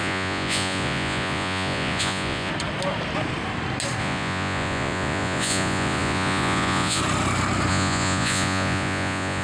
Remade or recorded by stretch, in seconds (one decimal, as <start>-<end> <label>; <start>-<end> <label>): 0.0-2.5 remade; 2.5-4.0 recorded; 4.0-7.0 remade; 7.0-7.7 recorded; 7.7-9.4 remade